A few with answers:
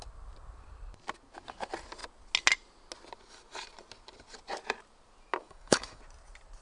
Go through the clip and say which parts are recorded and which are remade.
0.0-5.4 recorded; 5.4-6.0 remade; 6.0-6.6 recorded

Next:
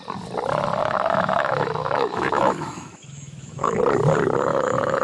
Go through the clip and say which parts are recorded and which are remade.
0.0-0.8 recorded; 0.8-3.8 remade; 3.8-4.5 recorded; 4.5-5.0 remade

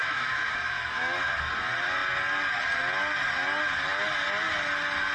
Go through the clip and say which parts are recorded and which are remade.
0.0-1.3 remade; 1.3-5.1 recorded